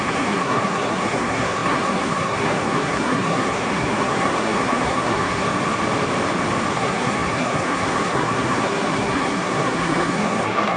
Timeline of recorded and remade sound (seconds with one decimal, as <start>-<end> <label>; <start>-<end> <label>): 0.0-5.5 remade; 5.5-6.7 recorded; 6.7-10.8 remade